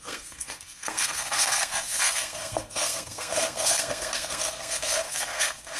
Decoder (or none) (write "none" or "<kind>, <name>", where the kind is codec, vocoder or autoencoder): codec, SNAC